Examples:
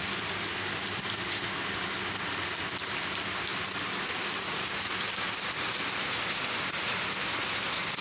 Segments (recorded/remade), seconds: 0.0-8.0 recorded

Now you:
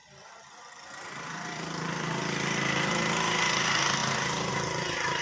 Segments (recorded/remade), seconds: 0.0-2.9 remade; 2.9-5.2 recorded

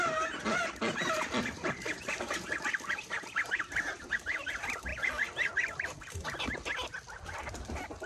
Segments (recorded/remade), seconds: 0.0-4.9 remade; 4.9-8.1 recorded

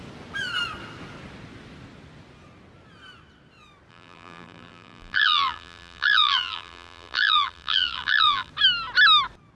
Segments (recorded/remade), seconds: 0.0-3.9 recorded; 3.9-8.5 remade; 8.5-9.6 recorded

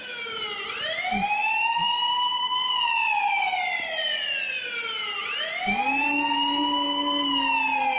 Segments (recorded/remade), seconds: 0.0-1.4 recorded; 1.4-5.2 remade; 5.2-8.0 recorded

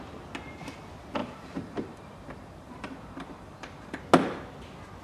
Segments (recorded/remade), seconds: 0.0-1.2 recorded; 1.2-4.0 remade; 4.0-5.0 recorded

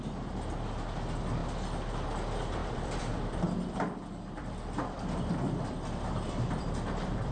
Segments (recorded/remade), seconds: 0.0-2.6 recorded; 2.6-7.3 remade